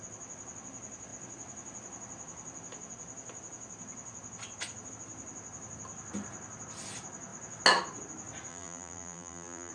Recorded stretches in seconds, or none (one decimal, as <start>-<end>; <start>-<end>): 0.0-8.5